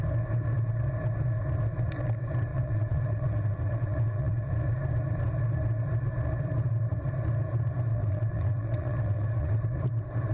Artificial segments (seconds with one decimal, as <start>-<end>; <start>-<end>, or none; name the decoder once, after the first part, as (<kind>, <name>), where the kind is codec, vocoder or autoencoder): 2.5-4.5 (vocoder, WaveNeXt); 7.9-9.6